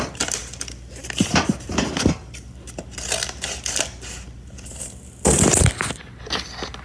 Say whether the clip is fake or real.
real